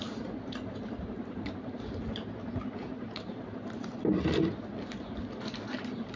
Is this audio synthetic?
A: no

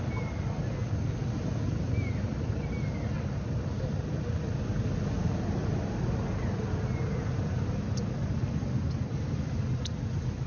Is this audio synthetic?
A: no